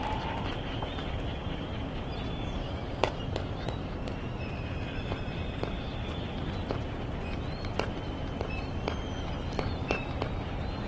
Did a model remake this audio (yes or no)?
yes